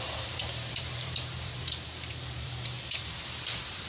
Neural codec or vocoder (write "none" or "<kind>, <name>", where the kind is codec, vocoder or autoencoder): vocoder, BigVGAN v2